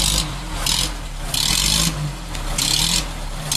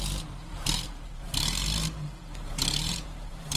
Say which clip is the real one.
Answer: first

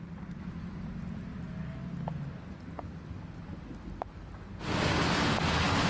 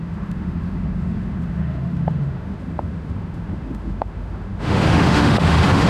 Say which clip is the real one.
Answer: first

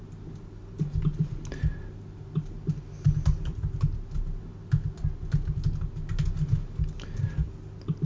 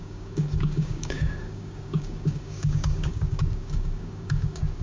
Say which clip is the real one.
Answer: first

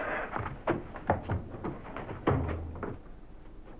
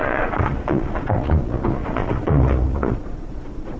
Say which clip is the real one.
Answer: first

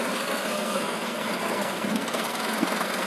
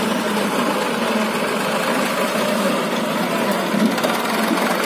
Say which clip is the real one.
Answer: second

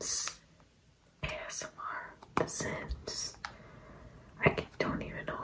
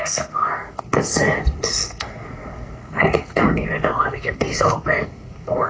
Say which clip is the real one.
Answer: first